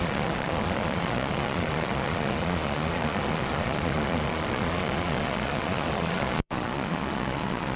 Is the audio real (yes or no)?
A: no